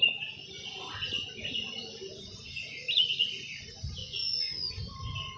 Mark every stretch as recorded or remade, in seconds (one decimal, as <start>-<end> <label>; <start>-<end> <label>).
0.0-4.0 recorded; 4.0-4.7 remade; 4.7-5.4 recorded

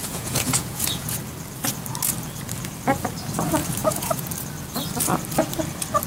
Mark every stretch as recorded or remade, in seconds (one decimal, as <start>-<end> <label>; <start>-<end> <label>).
0.0-1.2 remade; 1.2-3.8 recorded; 3.8-4.3 remade; 4.3-6.1 recorded

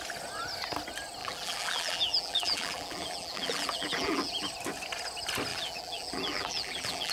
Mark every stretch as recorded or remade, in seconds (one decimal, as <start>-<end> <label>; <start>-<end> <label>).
0.0-1.2 recorded; 1.2-4.5 remade; 4.5-5.5 recorded; 5.5-7.1 remade

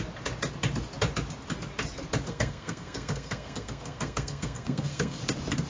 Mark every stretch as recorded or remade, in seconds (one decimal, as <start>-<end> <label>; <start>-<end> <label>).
0.0-2.3 recorded; 2.3-5.2 remade; 5.2-5.7 recorded

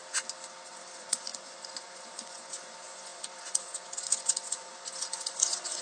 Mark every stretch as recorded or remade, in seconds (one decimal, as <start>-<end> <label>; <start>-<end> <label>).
0.0-0.7 recorded; 0.7-5.8 remade

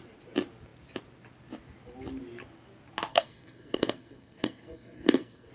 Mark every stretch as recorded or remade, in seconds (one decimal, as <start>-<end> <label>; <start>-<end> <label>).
0.0-3.1 recorded; 3.1-5.5 remade

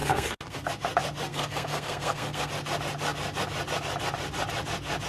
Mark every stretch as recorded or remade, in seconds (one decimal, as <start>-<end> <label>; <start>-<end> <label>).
0.0-0.7 remade; 0.7-1.3 recorded; 1.3-2.5 remade; 2.5-5.1 recorded

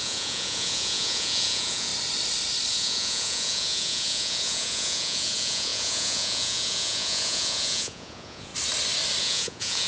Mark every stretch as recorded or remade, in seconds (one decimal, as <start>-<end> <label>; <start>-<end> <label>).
0.0-1.9 remade; 1.9-2.7 recorded; 2.7-8.5 remade; 8.5-9.2 recorded; 9.2-9.9 remade